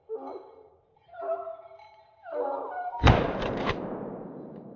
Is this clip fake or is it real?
fake